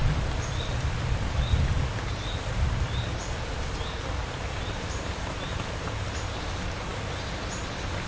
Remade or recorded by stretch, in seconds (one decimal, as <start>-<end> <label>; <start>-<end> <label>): 0.0-4.2 recorded; 4.2-6.4 remade; 6.4-8.1 recorded